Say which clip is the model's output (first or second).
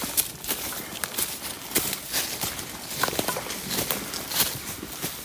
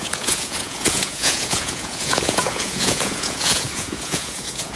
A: second